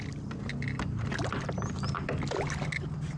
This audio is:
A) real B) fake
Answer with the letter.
A